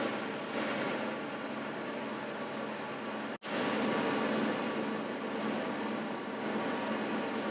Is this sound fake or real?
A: real